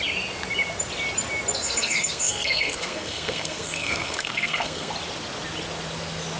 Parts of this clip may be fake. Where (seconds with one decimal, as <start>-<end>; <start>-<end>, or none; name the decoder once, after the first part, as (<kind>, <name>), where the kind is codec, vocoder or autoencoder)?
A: 1.6-4.9 (codec, SNAC)